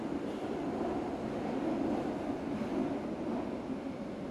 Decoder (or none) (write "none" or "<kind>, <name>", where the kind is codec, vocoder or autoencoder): none